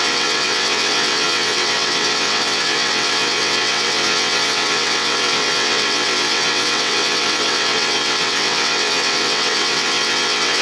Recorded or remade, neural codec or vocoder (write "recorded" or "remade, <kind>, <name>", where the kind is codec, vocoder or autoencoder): remade, vocoder, WaveNeXt